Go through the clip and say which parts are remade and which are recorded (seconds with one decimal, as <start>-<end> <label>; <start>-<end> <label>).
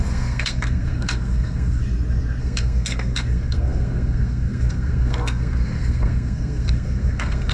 0.0-1.8 remade; 1.8-2.4 recorded; 2.4-7.5 remade